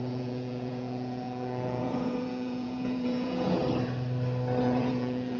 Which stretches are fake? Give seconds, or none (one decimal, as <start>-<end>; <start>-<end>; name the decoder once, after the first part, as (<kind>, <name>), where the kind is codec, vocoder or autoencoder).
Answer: 0.0-3.6 (vocoder, Vocos); 4.6-5.4